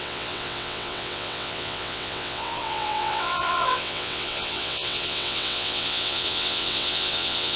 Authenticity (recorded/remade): remade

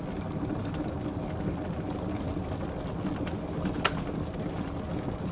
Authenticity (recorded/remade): recorded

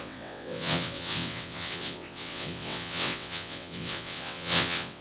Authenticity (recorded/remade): remade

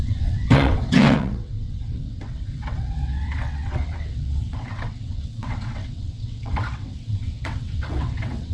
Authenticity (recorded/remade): remade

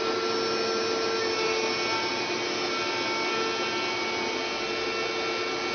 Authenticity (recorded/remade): recorded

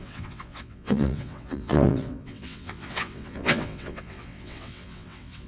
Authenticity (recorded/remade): remade